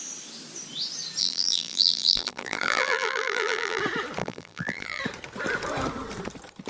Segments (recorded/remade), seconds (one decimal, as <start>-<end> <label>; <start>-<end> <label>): 0.0-1.2 recorded; 1.2-3.8 remade; 3.8-4.2 recorded; 4.2-5.0 remade; 5.0-6.7 recorded